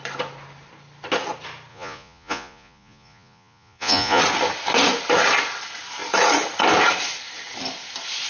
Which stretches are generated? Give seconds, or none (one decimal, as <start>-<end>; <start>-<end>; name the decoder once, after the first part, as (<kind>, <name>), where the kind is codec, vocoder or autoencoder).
1.7-4.2 (vocoder, Vocos)